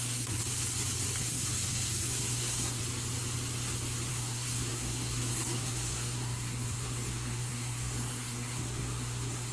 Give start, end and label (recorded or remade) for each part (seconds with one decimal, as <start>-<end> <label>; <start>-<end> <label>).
0.0-0.4 remade; 0.4-1.2 recorded; 1.2-2.8 remade; 2.8-4.1 recorded; 4.1-9.5 remade